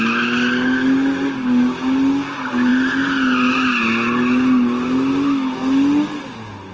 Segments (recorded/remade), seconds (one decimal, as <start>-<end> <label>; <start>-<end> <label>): 0.0-6.7 recorded